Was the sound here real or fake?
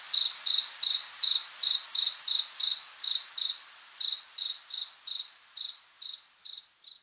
real